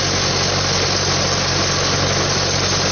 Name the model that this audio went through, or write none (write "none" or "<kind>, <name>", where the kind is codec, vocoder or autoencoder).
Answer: none